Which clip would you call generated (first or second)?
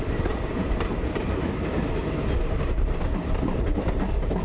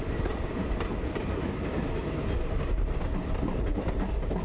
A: first